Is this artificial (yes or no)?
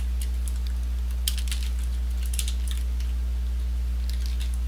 no